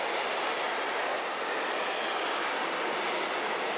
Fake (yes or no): no